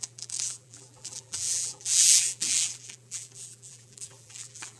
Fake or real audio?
fake